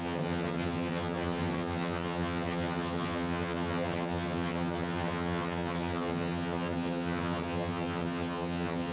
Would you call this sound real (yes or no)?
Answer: no